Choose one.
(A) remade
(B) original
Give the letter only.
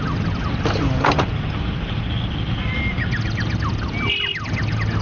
B